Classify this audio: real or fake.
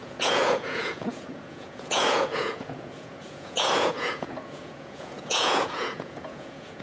fake